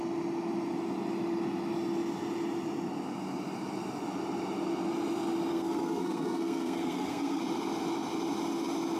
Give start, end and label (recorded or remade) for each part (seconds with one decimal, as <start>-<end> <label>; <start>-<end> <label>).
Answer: 0.0-5.5 recorded; 5.5-7.4 remade; 7.4-9.0 recorded